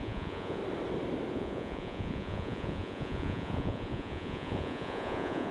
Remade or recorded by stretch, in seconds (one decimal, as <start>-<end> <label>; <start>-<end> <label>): 0.0-0.6 remade; 0.6-1.3 recorded; 1.3-5.5 remade